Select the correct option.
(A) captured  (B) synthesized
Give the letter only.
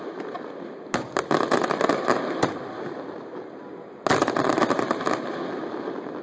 A